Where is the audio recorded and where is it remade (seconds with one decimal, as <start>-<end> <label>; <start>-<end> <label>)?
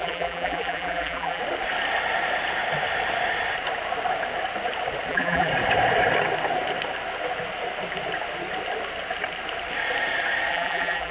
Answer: 0.0-1.4 remade; 1.4-5.1 recorded; 5.1-5.5 remade; 5.5-10.5 recorded; 10.5-11.1 remade